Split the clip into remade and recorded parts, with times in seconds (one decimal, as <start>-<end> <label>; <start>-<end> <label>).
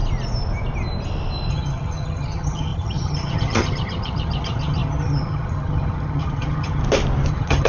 0.0-1.5 recorded; 1.5-6.8 remade; 6.8-7.3 recorded; 7.3-7.7 remade